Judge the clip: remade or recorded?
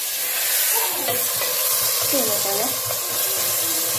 recorded